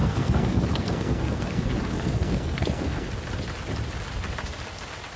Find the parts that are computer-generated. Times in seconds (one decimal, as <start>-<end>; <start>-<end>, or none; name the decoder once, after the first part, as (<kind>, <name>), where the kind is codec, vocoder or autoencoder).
0.0-3.1 (codec, SNAC)